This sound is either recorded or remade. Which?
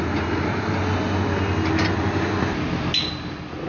recorded